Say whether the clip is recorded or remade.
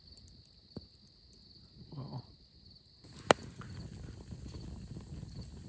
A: recorded